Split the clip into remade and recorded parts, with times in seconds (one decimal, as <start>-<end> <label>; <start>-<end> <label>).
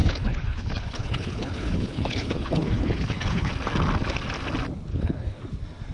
0.0-3.5 remade; 3.5-4.9 recorded; 4.9-5.4 remade; 5.4-5.9 recorded